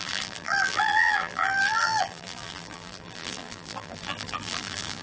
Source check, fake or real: fake